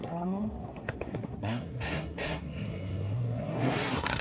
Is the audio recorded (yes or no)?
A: no